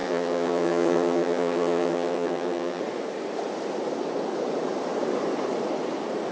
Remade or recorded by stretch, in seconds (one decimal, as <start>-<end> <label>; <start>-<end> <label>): 0.0-2.8 remade; 2.8-6.3 recorded